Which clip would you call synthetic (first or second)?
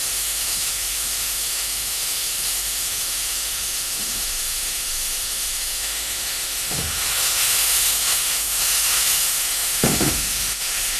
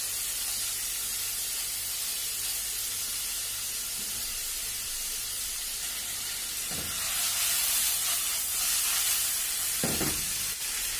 first